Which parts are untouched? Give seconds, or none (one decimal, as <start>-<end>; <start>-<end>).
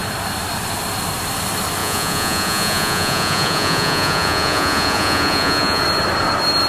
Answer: 0.0-1.8; 5.8-6.7